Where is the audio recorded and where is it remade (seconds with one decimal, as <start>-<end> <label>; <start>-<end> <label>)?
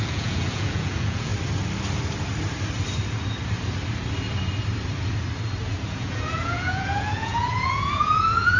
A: 0.0-1.3 remade; 1.3-5.9 recorded; 5.9-8.6 remade